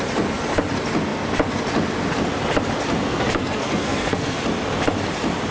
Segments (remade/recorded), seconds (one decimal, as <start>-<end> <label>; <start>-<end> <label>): 0.0-3.0 recorded; 3.0-4.4 remade; 4.4-5.5 recorded